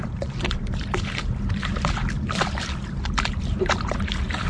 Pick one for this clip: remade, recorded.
remade